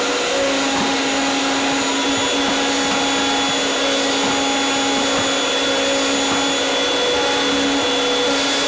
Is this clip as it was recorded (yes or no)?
yes